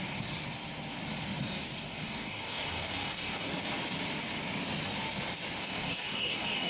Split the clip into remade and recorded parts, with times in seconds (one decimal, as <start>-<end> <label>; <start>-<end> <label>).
0.0-2.0 recorded; 2.0-3.5 remade; 3.5-5.6 recorded; 5.6-6.7 remade